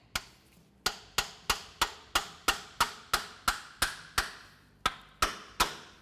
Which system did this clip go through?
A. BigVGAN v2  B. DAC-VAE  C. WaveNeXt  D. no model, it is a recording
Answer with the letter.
D